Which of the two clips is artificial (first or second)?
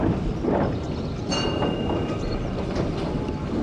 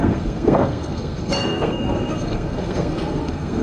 second